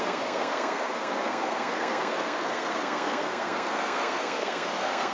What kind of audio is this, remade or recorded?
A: remade